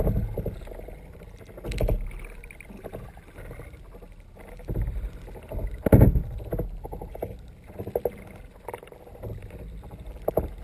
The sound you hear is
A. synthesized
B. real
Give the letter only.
B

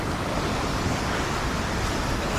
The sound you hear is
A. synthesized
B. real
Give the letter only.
B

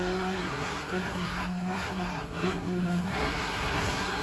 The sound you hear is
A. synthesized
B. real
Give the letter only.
A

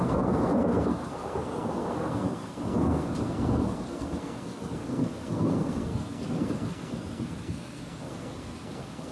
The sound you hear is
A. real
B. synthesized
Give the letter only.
B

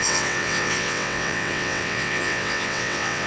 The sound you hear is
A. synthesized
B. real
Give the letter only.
A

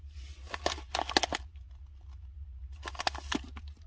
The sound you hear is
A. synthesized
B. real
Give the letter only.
B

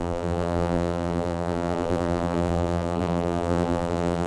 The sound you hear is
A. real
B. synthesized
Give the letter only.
B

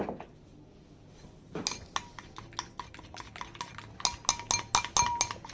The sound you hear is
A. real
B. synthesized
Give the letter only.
A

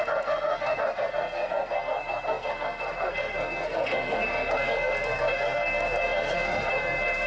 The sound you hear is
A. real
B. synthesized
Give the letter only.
B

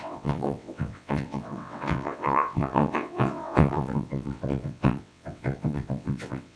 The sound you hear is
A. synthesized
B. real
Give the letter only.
A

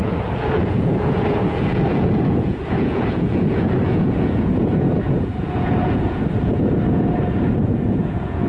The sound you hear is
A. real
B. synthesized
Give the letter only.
B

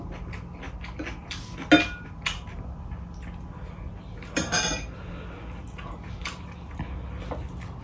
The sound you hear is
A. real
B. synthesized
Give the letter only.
A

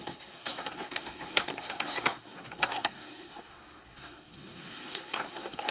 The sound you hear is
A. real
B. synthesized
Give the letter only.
B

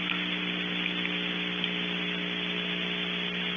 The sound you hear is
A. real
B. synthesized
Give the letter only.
A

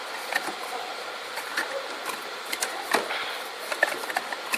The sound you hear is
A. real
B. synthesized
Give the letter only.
B